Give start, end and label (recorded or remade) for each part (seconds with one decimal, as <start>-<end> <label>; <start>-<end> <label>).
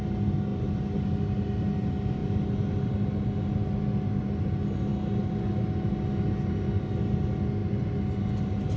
0.0-8.8 recorded